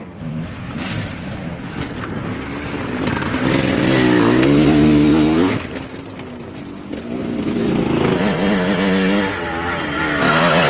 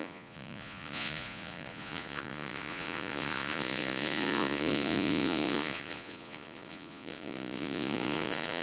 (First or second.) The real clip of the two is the first